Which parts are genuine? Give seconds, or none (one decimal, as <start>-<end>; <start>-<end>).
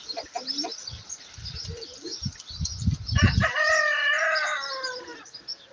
0.0-5.7